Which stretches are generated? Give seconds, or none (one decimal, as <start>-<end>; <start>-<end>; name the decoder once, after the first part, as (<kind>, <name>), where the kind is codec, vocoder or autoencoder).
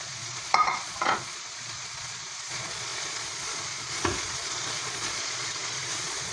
0.0-6.3 (vocoder, Vocos)